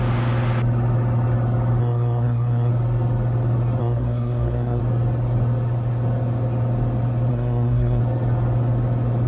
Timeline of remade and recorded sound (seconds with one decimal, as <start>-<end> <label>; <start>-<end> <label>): 0.0-1.8 recorded; 1.8-2.7 remade; 2.7-3.8 recorded; 3.8-4.8 remade; 4.8-7.3 recorded; 7.3-8.0 remade; 8.0-9.3 recorded